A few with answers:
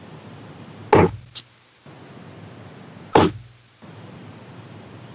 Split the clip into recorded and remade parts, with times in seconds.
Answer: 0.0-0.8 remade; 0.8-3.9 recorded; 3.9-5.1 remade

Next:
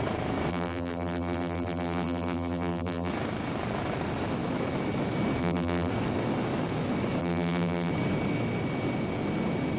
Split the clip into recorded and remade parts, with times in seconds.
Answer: 0.0-0.5 recorded; 0.5-3.1 remade; 3.1-5.4 recorded; 5.4-5.9 remade; 5.9-7.2 recorded; 7.2-7.9 remade; 7.9-9.8 recorded

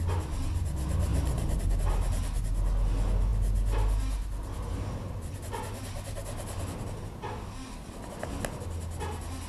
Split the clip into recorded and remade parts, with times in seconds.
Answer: 0.0-1.1 recorded; 1.1-1.6 remade; 1.6-9.5 recorded

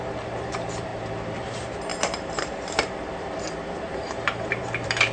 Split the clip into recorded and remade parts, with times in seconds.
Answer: 0.0-0.9 remade; 0.9-1.4 recorded; 1.4-5.1 remade